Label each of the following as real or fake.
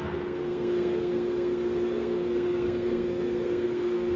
fake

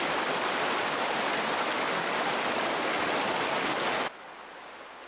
real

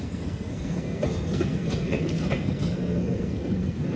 fake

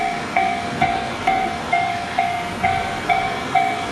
fake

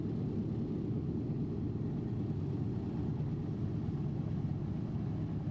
real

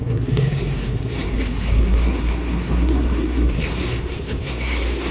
fake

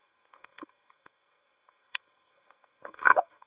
fake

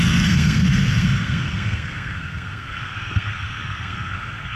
fake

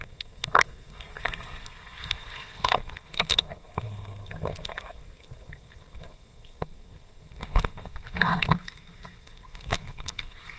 fake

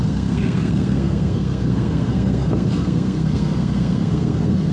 fake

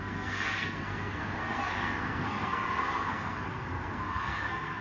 fake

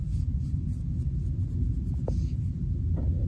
real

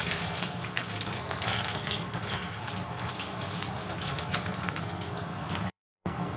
fake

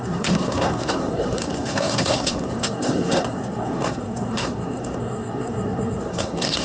fake